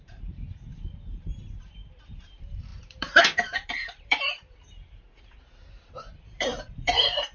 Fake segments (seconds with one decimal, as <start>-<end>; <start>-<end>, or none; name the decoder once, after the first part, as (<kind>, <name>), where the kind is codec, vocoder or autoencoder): 0.0-7.3 (vocoder, BigVGAN v2)